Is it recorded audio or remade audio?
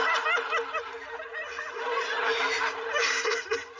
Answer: recorded